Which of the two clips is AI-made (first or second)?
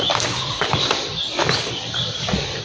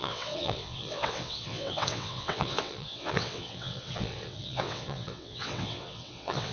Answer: second